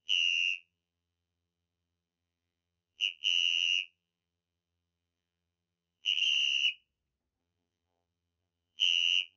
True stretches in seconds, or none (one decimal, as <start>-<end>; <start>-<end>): 6.2-7.4

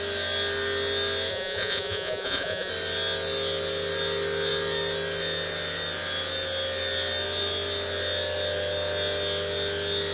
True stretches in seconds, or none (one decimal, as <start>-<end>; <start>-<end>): 0.0-1.3; 2.7-10.1